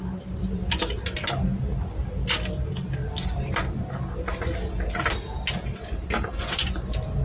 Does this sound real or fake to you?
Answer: real